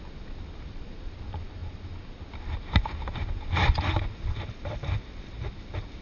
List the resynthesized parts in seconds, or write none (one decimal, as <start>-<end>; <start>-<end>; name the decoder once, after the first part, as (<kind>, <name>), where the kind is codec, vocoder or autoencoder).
none